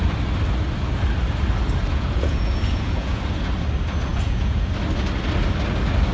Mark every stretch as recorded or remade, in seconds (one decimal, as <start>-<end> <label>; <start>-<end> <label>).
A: 0.0-1.9 recorded; 1.9-3.2 remade; 3.2-4.1 recorded; 4.1-4.7 remade; 4.7-6.1 recorded